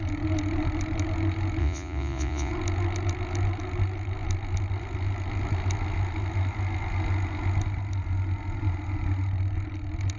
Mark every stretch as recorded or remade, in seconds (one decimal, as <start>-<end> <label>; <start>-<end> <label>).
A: 0.0-1.6 recorded; 1.6-2.5 remade; 2.5-10.2 recorded